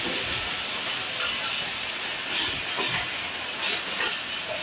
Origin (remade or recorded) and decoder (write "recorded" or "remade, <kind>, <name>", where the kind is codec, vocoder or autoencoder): recorded